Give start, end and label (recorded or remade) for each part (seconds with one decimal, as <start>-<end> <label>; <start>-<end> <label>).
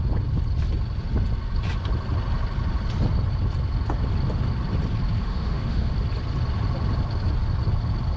0.0-5.2 recorded; 5.2-5.9 remade; 5.9-8.2 recorded